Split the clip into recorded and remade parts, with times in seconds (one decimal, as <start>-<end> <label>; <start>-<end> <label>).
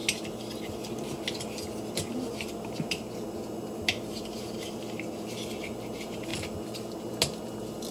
0.0-7.9 recorded